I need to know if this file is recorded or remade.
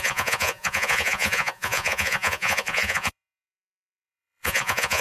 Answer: remade